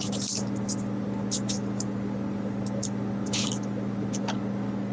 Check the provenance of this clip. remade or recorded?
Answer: recorded